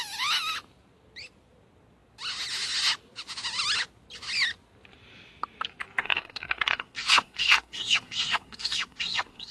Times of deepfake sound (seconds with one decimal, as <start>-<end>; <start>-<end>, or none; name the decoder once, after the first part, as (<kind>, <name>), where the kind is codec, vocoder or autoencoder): 6.0-9.5 (codec, SNAC)